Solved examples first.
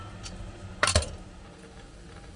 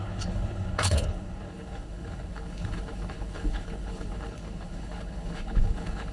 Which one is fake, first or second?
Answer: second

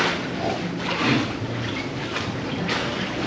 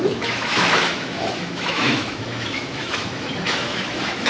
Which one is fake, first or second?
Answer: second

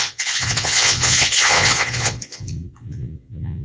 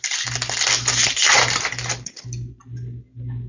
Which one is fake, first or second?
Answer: first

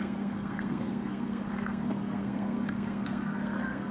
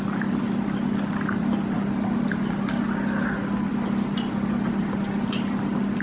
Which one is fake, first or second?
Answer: first